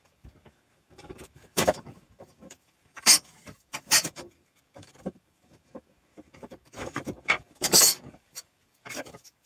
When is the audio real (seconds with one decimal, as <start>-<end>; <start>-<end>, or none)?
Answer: none